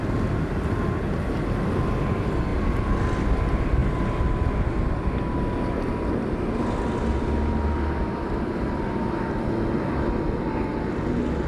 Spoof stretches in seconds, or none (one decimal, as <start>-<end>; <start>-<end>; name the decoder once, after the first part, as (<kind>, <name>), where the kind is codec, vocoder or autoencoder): none